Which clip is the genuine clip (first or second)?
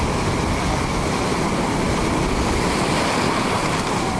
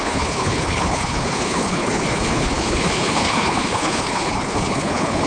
first